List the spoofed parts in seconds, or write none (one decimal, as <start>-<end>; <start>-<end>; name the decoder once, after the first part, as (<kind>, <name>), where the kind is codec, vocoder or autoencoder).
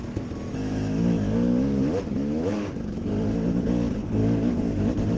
0.0-3.1 (autoencoder, DAC-VAE); 4.2-4.8